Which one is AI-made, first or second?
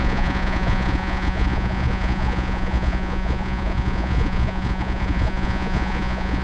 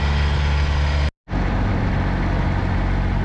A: first